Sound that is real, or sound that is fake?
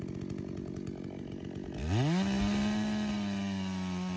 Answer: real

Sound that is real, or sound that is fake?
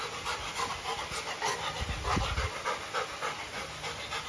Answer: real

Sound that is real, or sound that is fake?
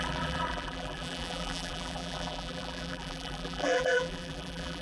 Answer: fake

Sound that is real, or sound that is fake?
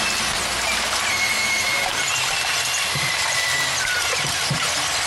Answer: real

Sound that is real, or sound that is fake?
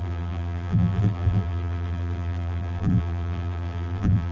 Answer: fake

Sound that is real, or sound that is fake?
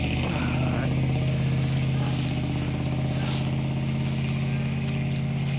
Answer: real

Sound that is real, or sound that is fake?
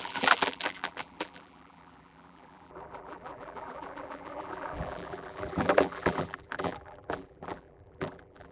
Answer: fake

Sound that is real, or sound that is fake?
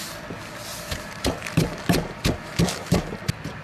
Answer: real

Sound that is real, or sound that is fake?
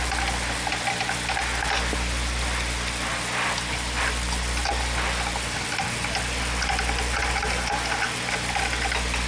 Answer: real